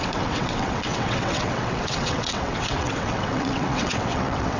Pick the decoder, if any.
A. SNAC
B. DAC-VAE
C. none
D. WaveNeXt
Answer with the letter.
D